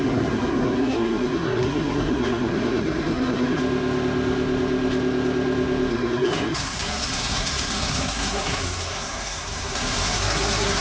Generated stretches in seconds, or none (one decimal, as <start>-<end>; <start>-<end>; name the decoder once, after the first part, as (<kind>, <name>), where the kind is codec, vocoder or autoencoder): 0.0-3.6 (codec, SNAC); 5.9-10.8